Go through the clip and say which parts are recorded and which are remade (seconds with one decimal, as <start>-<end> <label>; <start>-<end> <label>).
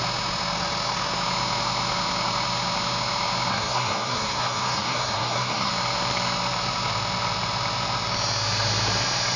0.0-3.5 recorded; 3.5-5.7 remade; 5.7-9.4 recorded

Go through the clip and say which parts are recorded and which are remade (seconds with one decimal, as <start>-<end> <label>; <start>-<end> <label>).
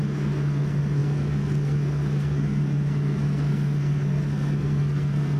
0.0-5.4 remade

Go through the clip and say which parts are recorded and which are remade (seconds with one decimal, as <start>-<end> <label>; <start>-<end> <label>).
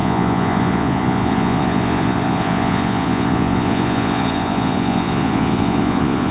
0.0-6.3 remade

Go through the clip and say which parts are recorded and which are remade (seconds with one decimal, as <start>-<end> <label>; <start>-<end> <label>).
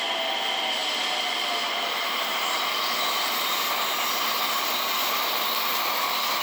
0.0-6.4 recorded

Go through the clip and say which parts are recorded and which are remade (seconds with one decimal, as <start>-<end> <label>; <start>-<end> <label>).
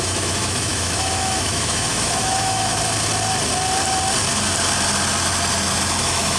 0.0-2.7 remade; 2.7-6.0 recorded; 6.0-6.4 remade